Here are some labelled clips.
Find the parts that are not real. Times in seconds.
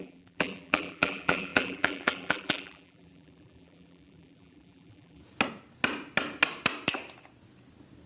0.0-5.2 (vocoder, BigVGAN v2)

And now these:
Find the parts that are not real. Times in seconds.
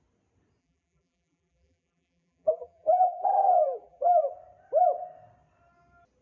0.6-4.3 (vocoder, BigVGAN v2)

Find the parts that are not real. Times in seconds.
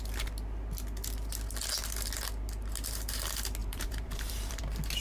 3.6-4.6 (vocoder, BigVGAN v2)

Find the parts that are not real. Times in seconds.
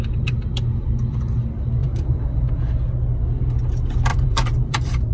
1.8-2.5 (vocoder, BigVGAN v2); 4.1-5.1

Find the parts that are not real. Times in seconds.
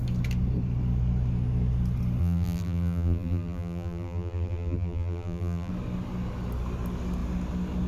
2.2-5.7 (vocoder, BigVGAN v2)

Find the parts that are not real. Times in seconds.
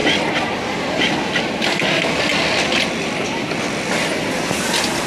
0.9-2.3 (vocoder, BigVGAN v2)